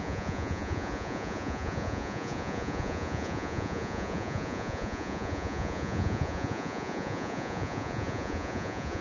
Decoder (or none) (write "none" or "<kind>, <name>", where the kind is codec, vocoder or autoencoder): vocoder, Vocos